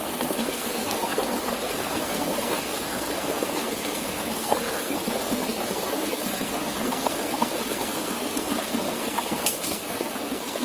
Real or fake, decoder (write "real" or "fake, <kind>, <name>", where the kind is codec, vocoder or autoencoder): fake, codec, SNAC